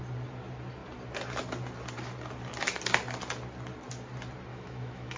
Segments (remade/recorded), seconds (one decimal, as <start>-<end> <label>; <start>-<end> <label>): 0.0-4.5 recorded; 4.5-5.2 remade